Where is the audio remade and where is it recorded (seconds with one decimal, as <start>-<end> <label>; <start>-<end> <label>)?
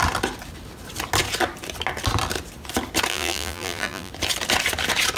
0.0-3.1 recorded; 3.1-4.1 remade; 4.1-5.2 recorded